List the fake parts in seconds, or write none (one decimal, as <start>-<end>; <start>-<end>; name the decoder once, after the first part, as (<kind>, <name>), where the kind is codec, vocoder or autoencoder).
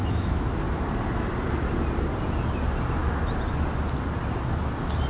0.0-0.5 (autoencoder, DAC-VAE)